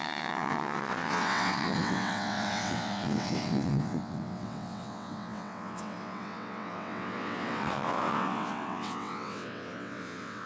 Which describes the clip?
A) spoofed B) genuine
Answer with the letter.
A